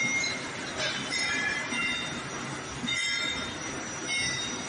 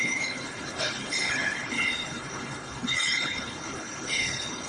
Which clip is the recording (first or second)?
first